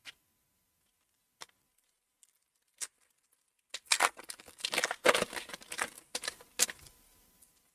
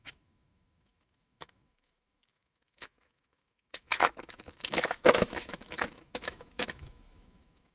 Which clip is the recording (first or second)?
first